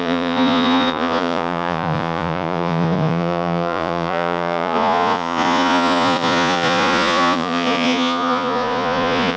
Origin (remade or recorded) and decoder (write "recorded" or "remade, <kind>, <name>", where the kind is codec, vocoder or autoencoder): remade, vocoder, Vocos